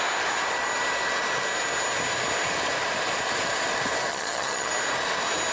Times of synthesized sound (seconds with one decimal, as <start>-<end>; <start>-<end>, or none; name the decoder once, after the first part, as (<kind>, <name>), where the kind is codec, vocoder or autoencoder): 4.1-4.7 (vocoder, HiFi-GAN)